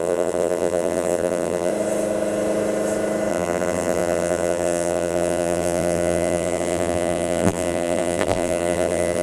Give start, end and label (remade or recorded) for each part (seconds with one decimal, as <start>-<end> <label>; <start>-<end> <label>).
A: 0.0-1.7 remade; 1.7-3.3 recorded; 3.3-9.2 remade